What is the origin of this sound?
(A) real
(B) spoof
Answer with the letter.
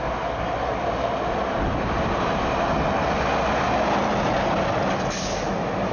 A